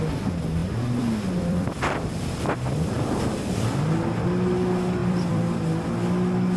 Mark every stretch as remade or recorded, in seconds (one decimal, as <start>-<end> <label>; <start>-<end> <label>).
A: 0.0-0.6 recorded; 0.6-3.8 remade; 3.8-5.0 recorded; 5.0-5.9 remade; 5.9-6.6 recorded